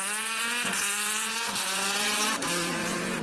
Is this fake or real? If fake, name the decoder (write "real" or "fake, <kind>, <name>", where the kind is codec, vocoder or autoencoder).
fake, vocoder, Vocos